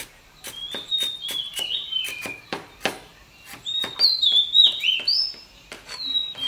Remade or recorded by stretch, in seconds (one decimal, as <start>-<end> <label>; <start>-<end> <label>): 0.0-1.5 recorded; 1.5-3.3 remade; 3.3-6.5 recorded